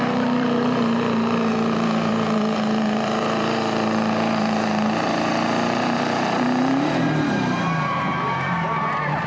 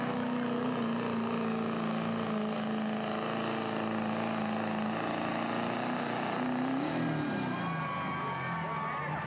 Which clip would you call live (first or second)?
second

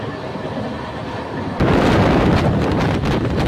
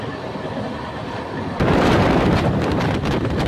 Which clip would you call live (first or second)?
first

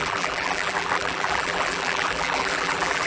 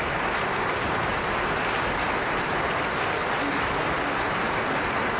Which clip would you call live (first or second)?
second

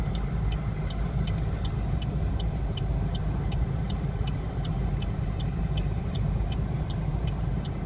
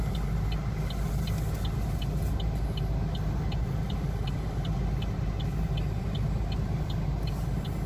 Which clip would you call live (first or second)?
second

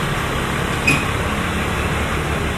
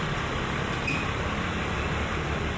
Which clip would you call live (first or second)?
first